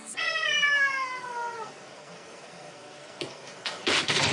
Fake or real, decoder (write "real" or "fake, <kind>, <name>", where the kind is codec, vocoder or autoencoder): fake, codec, SNAC